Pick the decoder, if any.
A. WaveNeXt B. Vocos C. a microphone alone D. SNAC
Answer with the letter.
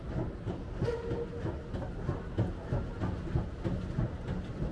C